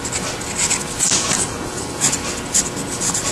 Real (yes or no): yes